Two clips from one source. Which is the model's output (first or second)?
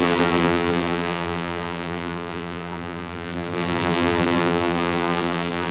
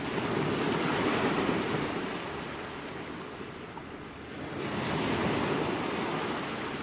first